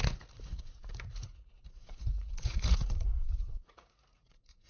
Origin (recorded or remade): remade